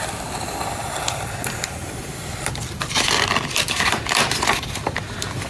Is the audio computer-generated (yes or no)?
yes